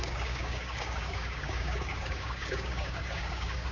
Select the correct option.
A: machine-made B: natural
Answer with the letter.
A